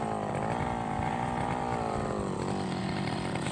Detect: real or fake real